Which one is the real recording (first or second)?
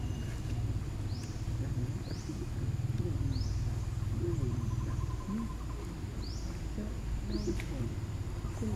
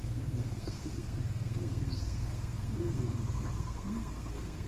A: first